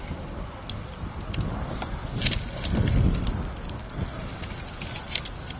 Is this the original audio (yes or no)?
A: yes